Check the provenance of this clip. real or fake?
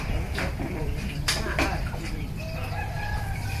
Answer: fake